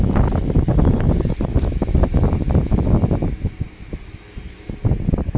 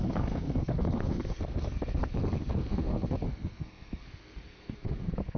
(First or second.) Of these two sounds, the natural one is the first